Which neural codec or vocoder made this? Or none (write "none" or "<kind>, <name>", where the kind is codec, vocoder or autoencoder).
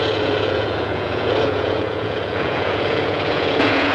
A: vocoder, Vocos